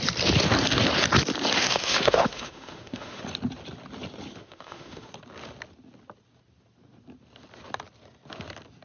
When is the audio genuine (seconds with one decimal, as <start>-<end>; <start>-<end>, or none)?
0.0-1.6; 3.2-4.4; 5.1-8.8